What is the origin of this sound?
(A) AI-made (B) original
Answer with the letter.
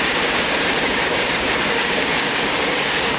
A